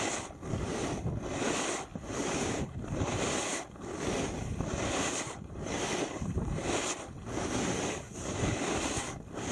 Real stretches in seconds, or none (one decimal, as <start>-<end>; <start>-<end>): 0.0-1.9; 4.1-4.7; 6.6-9.5

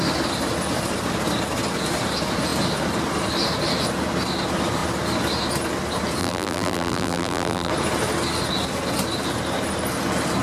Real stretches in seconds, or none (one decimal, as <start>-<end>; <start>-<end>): 0.0-6.2; 7.7-10.4

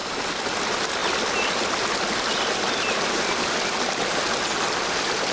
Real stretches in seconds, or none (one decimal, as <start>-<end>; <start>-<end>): 0.5-1.0; 4.2-5.3

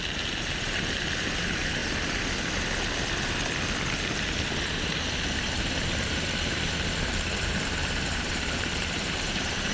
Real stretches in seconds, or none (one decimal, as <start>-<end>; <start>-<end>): 1.8-4.8

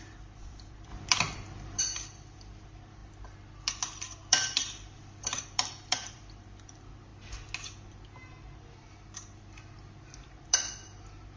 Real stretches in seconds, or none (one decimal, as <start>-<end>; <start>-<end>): 7.1-10.3